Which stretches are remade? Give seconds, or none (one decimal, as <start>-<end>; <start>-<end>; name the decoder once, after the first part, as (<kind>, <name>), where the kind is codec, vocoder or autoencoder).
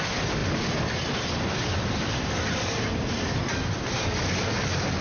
none